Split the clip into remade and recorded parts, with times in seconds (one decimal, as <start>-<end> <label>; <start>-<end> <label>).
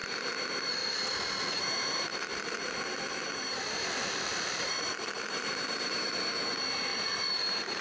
0.0-1.4 recorded; 1.4-7.8 remade